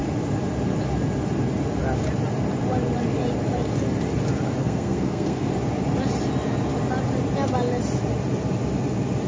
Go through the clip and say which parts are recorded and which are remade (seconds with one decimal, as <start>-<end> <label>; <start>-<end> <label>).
0.0-4.6 recorded; 4.6-5.5 remade; 5.5-9.3 recorded